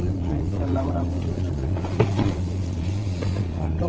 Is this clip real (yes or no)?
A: no